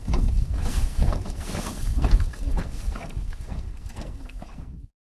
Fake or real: fake